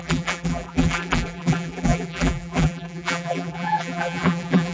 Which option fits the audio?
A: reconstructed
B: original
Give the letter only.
A